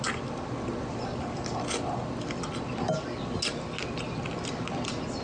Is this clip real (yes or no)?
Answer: yes